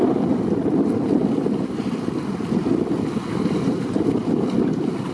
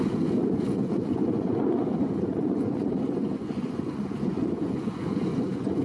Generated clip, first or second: second